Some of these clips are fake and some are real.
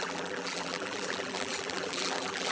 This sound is fake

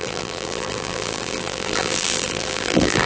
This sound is fake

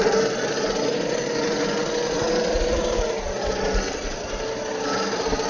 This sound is real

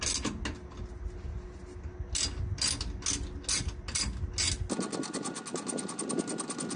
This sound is real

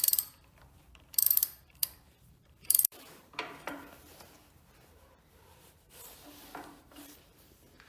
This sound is fake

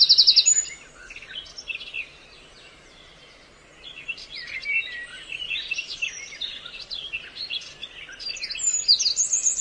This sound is real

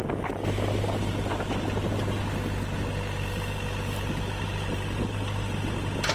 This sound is real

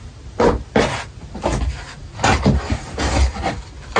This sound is real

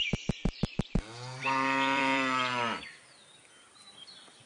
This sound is fake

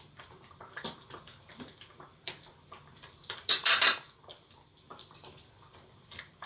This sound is fake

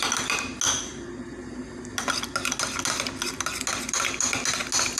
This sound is real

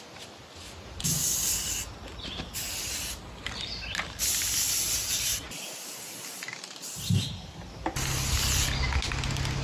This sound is real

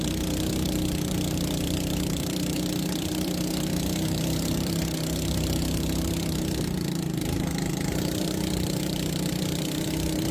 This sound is fake